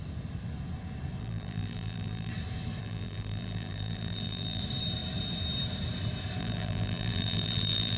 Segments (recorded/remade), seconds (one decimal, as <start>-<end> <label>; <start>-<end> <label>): 0.0-1.2 recorded; 1.2-2.3 remade; 2.3-2.8 recorded; 2.8-4.6 remade; 4.6-6.4 recorded; 6.4-8.0 remade